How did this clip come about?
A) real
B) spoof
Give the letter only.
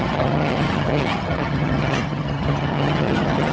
B